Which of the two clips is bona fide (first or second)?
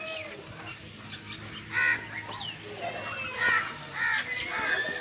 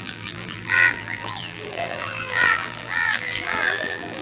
first